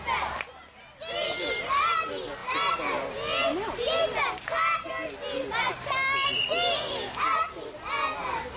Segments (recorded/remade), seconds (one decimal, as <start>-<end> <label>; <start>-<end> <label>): 0.0-8.6 recorded